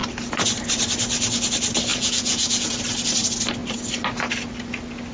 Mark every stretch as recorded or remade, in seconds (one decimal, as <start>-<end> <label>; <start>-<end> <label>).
0.0-1.9 recorded; 1.9-2.7 remade; 2.7-5.1 recorded

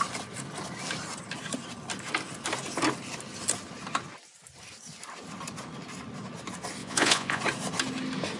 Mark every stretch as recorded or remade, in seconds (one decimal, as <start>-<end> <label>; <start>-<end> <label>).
0.0-6.8 recorded; 6.8-7.4 remade; 7.4-8.4 recorded

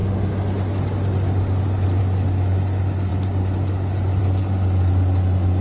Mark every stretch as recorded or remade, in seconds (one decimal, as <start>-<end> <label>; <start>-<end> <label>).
0.0-5.6 recorded

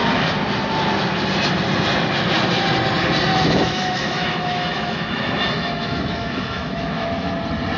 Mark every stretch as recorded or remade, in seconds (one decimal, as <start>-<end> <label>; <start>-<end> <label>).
0.0-3.3 recorded; 3.3-7.3 remade; 7.3-7.8 recorded

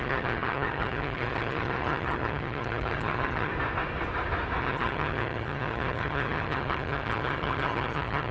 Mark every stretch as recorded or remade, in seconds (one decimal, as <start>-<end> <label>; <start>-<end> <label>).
0.0-3.5 remade; 3.5-4.6 recorded; 4.6-8.3 remade